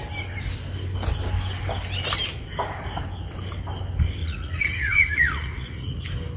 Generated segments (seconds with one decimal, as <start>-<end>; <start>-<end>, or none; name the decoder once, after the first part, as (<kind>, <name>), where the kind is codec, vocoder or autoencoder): 4.2-6.0 (vocoder, Vocos)